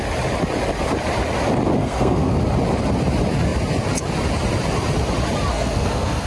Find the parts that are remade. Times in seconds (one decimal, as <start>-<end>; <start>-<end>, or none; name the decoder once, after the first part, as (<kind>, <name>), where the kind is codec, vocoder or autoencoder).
1.8-2.3 (codec, SNAC); 5.5-6.3

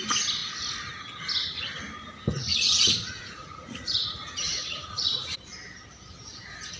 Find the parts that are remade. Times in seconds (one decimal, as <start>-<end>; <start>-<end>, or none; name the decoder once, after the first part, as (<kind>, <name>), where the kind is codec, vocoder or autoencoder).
2.5-5.5 (vocoder, Vocos)

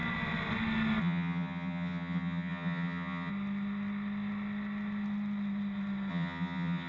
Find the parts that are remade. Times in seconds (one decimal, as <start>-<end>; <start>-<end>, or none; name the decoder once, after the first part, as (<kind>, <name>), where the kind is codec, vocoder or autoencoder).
1.0-3.3 (vocoder, HiFi-GAN); 6.1-6.9

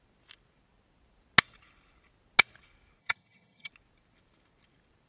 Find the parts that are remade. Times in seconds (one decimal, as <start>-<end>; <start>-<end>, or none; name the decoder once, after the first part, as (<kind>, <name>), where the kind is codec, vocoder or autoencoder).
3.0-3.7 (vocoder, HiFi-GAN)

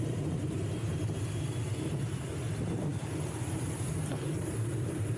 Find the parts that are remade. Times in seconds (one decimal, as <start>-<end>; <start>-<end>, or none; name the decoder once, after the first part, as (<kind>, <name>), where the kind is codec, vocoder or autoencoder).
0.0-5.2 (vocoder, BigVGAN v2)

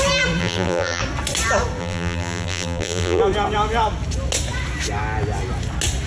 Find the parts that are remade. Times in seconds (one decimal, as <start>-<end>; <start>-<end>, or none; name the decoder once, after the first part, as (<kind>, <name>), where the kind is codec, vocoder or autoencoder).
0.4-1.0 (vocoder, BigVGAN v2); 1.8-3.2